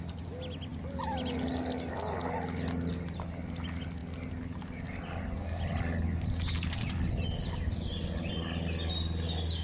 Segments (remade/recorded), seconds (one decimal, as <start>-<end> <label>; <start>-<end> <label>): 0.0-9.6 recorded